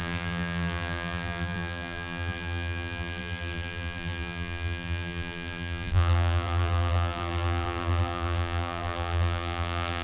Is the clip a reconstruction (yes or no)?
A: yes